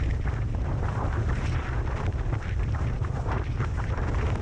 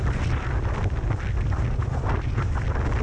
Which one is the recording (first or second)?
second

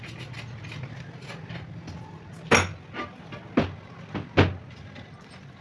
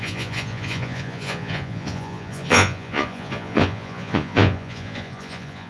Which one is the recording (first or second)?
first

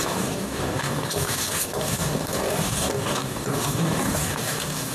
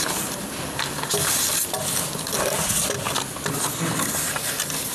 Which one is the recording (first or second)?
second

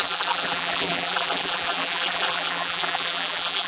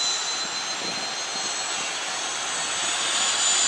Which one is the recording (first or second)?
second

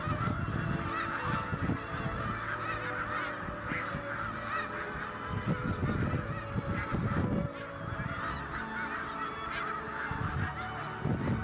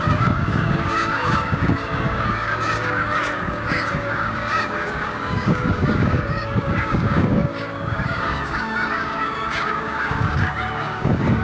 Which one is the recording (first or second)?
first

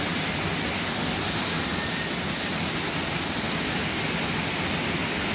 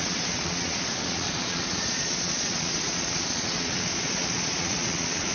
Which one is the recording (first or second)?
first